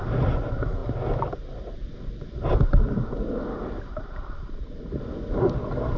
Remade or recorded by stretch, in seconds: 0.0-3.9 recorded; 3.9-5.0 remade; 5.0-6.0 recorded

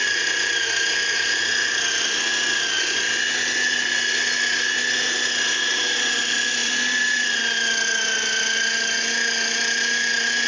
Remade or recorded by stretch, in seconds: 0.0-6.6 recorded; 6.6-7.4 remade; 7.4-10.5 recorded

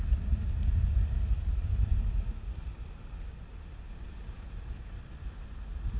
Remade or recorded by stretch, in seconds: 0.0-6.0 recorded

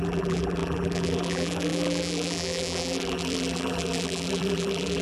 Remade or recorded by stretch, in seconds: 0.0-5.0 remade

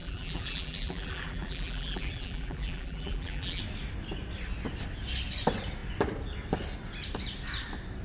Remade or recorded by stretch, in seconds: 0.0-3.6 remade; 3.6-8.0 recorded